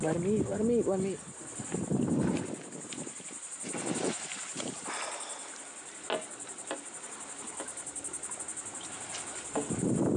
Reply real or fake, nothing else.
real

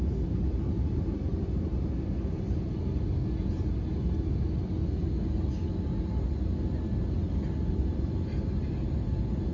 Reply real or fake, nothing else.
real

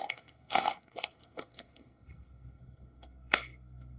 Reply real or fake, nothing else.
fake